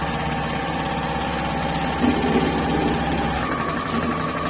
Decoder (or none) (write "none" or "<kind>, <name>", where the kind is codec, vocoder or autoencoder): none